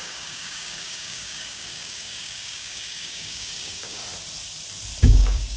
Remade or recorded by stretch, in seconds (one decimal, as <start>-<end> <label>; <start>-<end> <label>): 0.0-4.0 remade; 4.0-5.0 recorded; 5.0-5.6 remade